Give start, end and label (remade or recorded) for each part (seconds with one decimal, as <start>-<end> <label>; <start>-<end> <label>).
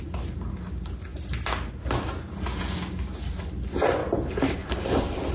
0.0-4.0 recorded; 4.0-4.7 remade; 4.7-5.3 recorded